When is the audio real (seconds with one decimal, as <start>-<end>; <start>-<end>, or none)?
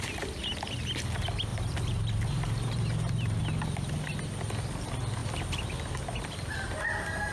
0.0-1.5; 3.4-7.3